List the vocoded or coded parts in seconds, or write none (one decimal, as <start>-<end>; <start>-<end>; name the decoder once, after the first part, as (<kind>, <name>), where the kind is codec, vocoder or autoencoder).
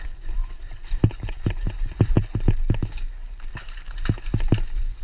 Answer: 0.4-2.7 (vocoder, BigVGAN v2); 3.2-3.9